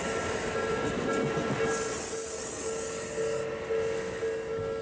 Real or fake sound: real